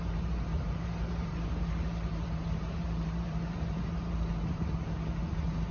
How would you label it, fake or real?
fake